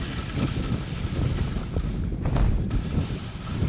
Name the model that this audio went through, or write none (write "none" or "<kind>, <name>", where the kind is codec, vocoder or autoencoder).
none